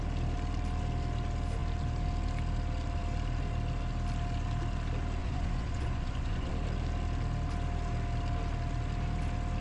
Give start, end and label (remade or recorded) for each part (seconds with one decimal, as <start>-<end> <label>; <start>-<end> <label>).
0.0-5.2 recorded; 5.2-6.5 remade; 6.5-9.6 recorded